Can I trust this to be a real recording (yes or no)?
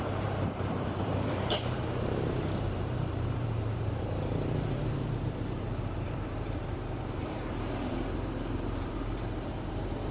no